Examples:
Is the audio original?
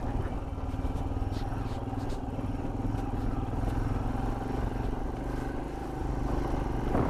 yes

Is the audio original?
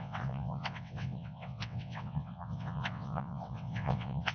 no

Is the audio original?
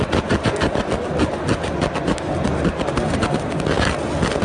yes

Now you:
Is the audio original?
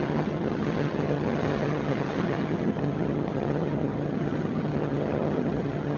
no